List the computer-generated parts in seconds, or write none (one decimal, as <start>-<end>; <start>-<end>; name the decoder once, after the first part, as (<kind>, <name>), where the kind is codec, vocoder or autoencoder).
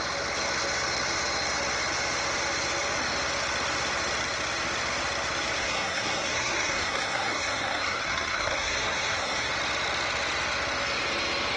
5.6-9.5 (codec, SNAC)